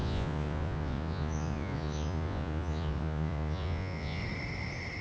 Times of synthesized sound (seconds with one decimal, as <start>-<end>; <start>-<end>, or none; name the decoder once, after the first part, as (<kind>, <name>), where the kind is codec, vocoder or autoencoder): 0.0-4.2 (vocoder, Vocos)